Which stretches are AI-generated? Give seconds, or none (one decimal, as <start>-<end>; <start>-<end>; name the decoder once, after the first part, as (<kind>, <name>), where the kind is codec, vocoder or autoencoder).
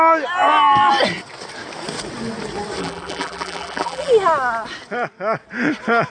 2.8-4.1 (vocoder, BigVGAN v2)